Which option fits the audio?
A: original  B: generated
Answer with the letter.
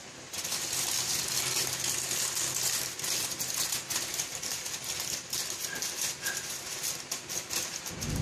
A